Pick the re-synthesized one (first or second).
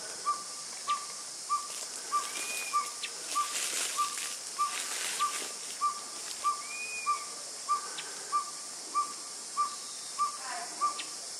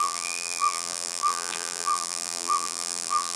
second